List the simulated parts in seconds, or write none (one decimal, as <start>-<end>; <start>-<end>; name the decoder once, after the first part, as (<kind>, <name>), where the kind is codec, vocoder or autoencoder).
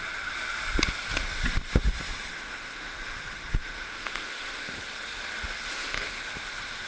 2.3-3.2 (autoencoder, DAC-VAE); 3.6-4.8; 5.7-6.3